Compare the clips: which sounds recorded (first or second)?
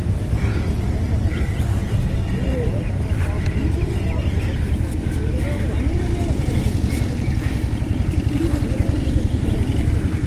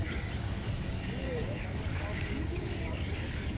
first